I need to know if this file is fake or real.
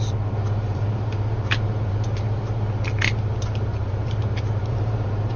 fake